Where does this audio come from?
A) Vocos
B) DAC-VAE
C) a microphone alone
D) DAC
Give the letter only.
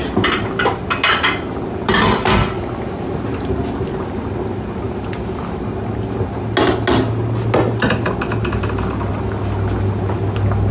C